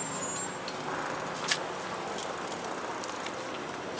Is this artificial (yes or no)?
no